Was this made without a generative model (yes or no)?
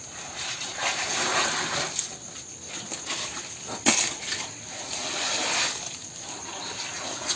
yes